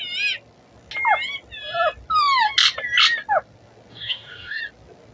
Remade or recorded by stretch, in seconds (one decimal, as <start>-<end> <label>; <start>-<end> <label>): 0.0-3.9 recorded; 3.9-4.6 remade; 4.6-5.1 recorded